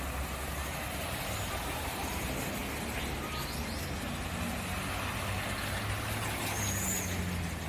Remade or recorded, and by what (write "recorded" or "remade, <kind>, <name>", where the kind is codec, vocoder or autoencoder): recorded